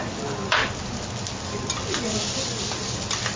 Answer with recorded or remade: recorded